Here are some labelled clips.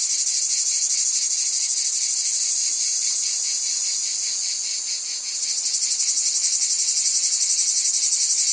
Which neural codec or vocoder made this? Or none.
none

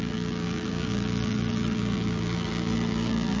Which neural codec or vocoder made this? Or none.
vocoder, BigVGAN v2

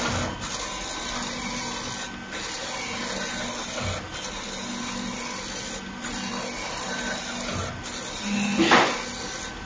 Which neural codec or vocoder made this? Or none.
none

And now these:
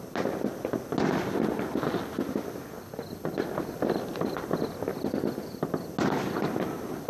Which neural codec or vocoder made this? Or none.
none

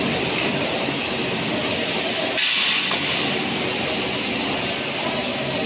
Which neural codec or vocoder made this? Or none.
none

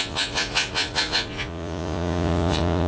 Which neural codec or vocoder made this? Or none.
vocoder, Vocos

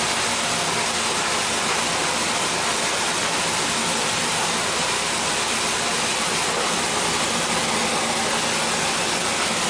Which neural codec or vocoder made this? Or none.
none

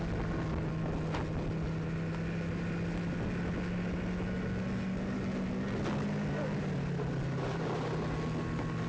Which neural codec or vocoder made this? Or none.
none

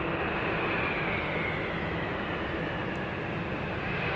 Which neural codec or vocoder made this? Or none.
none